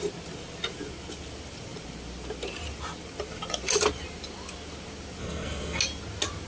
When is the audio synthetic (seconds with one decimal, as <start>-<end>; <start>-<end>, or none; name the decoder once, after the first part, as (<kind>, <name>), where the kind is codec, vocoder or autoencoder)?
5.2-5.8 (codec, SNAC)